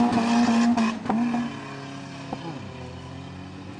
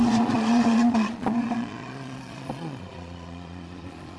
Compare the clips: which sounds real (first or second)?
first